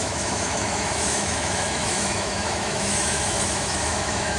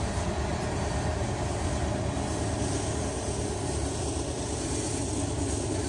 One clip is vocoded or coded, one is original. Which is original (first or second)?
second